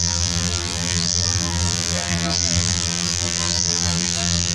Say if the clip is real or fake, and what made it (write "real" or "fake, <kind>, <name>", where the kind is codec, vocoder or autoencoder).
fake, vocoder, BigVGAN v2